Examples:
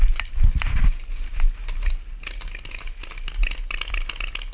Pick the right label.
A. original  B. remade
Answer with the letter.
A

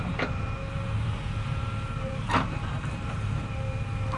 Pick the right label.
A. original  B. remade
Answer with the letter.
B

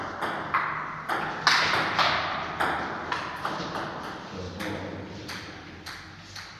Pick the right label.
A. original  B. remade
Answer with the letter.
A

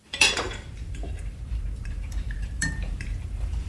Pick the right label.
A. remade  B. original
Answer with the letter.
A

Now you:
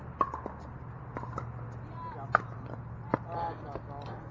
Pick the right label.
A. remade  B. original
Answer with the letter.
B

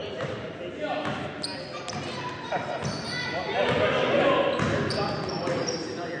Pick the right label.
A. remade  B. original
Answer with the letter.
B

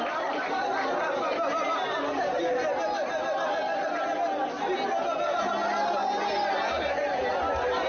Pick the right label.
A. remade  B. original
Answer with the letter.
B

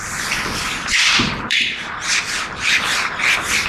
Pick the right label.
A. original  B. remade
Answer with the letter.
B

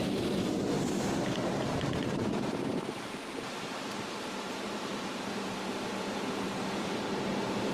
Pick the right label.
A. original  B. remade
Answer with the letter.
B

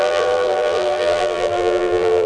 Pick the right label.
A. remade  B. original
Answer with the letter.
A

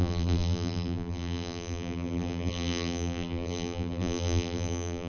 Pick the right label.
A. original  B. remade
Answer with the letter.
B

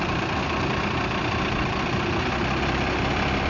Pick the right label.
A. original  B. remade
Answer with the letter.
B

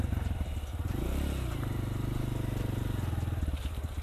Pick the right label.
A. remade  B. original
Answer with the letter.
B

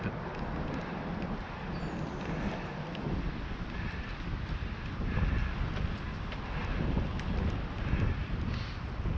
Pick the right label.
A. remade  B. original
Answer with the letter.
B